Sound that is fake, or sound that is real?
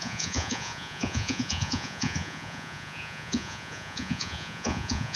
fake